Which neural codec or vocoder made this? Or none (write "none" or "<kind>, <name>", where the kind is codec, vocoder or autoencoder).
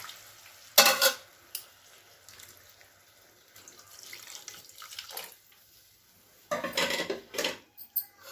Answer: none